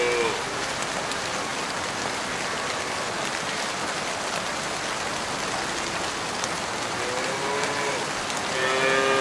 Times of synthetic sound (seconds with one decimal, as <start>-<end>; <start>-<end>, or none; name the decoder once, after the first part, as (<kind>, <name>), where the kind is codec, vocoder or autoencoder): none